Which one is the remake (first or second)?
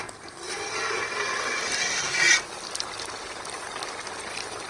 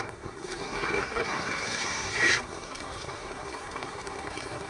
second